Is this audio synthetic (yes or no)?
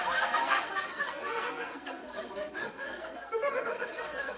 yes